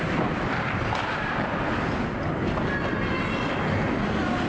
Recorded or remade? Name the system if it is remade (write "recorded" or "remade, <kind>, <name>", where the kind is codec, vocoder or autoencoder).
recorded